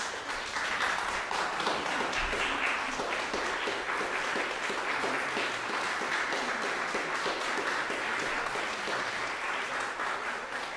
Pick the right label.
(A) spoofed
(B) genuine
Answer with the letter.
B